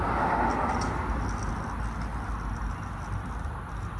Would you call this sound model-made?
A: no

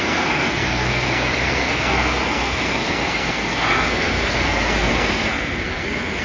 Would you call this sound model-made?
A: yes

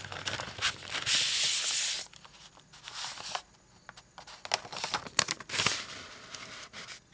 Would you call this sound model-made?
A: no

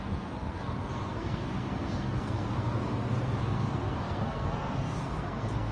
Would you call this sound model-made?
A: yes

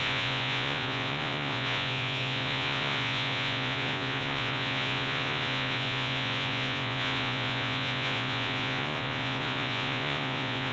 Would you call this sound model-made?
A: yes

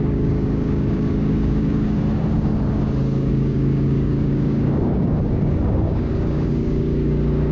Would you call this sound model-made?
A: yes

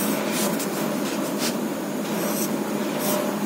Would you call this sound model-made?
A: no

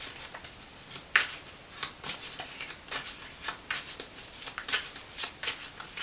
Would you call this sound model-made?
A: yes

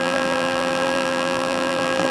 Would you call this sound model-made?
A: yes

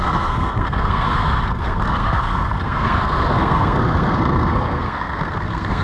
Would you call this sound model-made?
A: yes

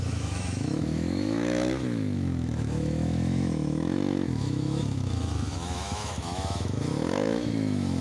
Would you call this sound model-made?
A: yes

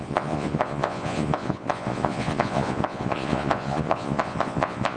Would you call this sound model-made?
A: yes